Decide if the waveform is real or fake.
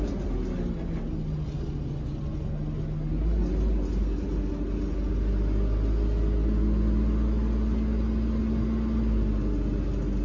real